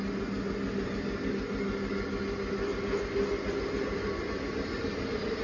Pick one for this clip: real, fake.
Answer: real